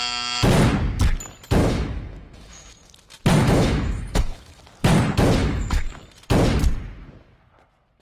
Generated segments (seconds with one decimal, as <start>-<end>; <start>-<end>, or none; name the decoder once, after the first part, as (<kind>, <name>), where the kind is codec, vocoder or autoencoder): 1.6-2.9 (autoencoder, DAC-VAE); 3.4-4.6; 5.4-6.0